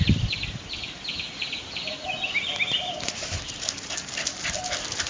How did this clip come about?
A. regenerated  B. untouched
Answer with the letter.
A